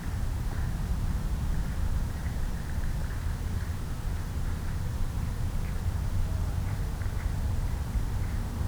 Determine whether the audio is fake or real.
fake